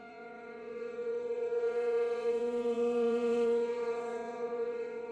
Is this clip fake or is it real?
fake